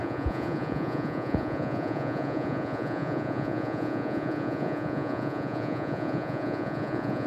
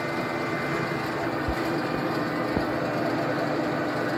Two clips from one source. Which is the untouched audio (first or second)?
second